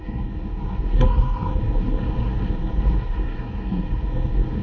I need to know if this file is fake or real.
fake